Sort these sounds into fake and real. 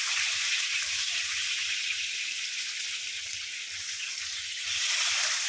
real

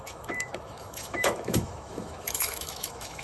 fake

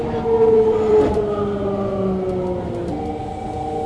real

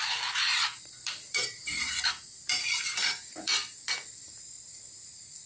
fake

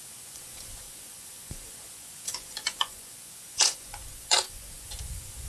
fake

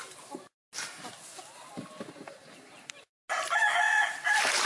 real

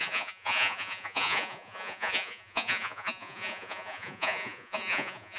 fake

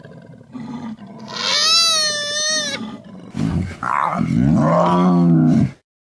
real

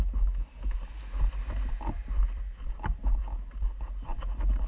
real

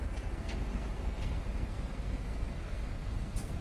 fake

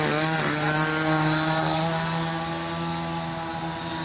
real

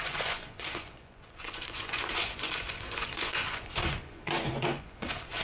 fake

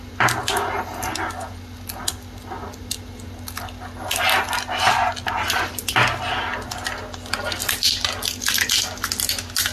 real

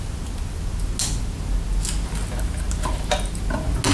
real